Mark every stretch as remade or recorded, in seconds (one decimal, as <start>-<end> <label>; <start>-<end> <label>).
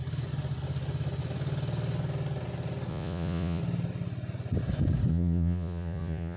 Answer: 0.0-2.9 recorded; 2.9-3.6 remade; 3.6-5.1 recorded; 5.1-6.4 remade